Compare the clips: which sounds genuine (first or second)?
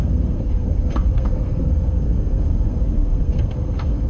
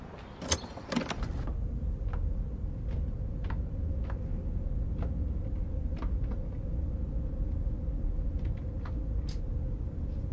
second